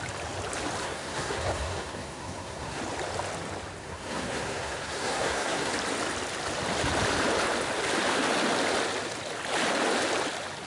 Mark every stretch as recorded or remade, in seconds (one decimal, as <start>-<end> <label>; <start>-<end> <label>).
0.0-0.8 recorded; 0.8-2.8 remade; 2.8-3.8 recorded; 3.8-5.7 remade; 5.7-10.7 recorded